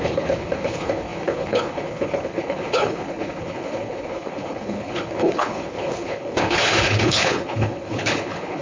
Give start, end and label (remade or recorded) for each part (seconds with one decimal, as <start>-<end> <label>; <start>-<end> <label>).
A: 0.0-8.6 remade